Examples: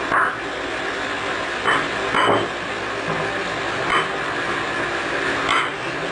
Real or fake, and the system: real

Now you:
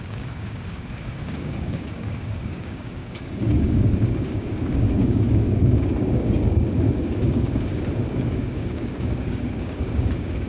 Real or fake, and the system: fake, codec, DAC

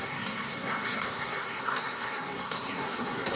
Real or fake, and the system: fake, codec, SNAC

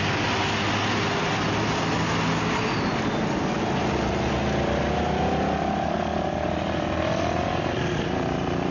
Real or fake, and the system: real